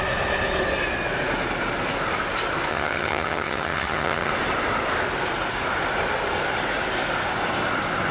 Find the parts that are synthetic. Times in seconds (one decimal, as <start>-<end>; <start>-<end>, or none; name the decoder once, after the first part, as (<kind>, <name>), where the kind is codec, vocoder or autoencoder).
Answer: 2.7-4.3 (vocoder, HiFi-GAN)